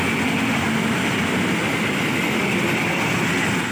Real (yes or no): yes